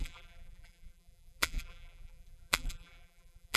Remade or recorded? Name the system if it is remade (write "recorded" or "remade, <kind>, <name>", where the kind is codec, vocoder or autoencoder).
remade, vocoder, BigVGAN v2